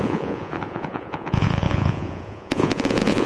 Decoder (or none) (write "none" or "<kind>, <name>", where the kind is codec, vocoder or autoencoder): vocoder, Vocos